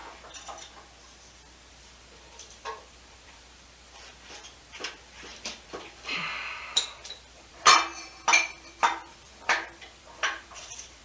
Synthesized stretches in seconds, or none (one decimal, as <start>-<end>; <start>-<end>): 1.7-7.9; 8.8-11.0